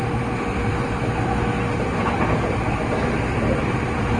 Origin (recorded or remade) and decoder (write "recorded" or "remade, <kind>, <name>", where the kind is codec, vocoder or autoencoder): recorded